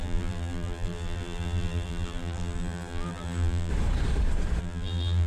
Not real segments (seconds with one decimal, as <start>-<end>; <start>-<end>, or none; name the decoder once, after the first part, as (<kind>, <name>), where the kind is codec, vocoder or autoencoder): 0.0-3.7 (vocoder, BigVGAN v2); 4.6-5.3